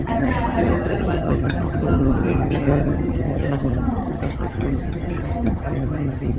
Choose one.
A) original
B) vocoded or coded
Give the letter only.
B